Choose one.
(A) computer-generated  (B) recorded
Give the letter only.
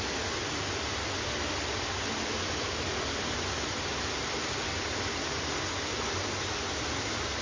B